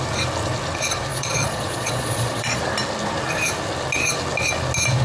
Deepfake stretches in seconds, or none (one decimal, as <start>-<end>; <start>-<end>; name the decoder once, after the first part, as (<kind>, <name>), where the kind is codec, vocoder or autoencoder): 1.1-2.6 (vocoder, Vocos)